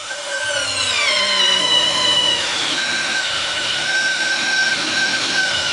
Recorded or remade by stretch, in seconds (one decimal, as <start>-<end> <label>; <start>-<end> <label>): 0.0-0.4 remade; 0.4-1.6 recorded; 1.6-5.7 remade